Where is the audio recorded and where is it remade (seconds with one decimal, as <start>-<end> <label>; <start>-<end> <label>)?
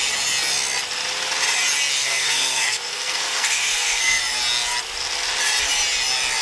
0.0-2.0 recorded; 2.0-4.2 remade; 4.2-6.4 recorded